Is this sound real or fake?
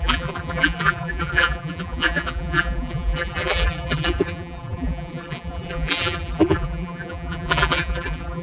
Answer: fake